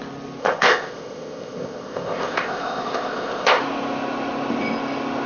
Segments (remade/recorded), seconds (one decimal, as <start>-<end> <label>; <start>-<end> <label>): 0.0-0.4 recorded; 0.4-3.6 remade; 3.6-5.3 recorded